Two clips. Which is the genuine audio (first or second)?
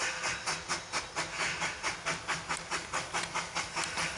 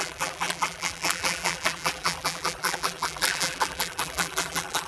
first